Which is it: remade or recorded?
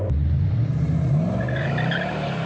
remade